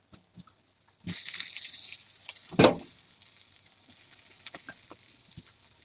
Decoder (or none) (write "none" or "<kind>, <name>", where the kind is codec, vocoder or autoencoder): none